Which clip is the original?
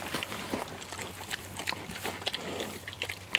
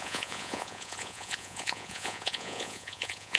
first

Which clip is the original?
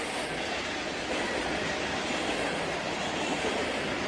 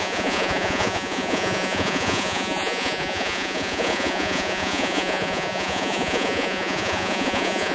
first